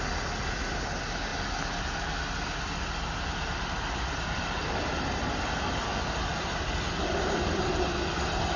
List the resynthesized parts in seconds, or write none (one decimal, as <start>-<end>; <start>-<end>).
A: none